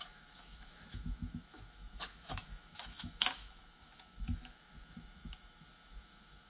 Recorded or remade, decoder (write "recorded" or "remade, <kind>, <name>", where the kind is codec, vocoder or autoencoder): remade, autoencoder, DAC-VAE